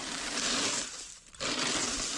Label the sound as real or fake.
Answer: real